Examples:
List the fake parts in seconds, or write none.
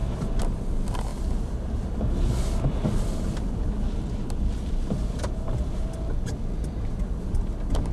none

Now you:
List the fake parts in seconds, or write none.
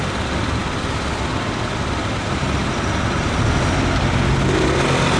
none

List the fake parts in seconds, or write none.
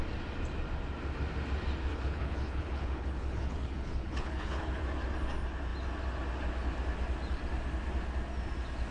1.9-4.8 (codec, HILCodec)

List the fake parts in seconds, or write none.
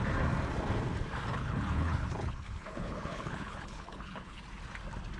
1.3-4.4 (codec, HILCodec)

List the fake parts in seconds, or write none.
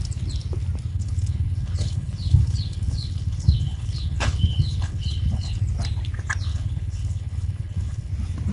0.9-5.6 (codec, HILCodec); 6.5-8.1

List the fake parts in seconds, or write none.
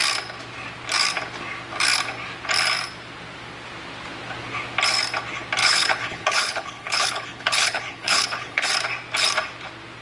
5.6-8.7 (codec, HILCodec)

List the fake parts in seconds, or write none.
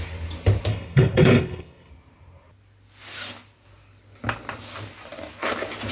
0.7-1.9 (codec, HILCodec)